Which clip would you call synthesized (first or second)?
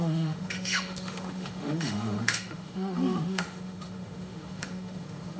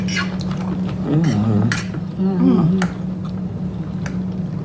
first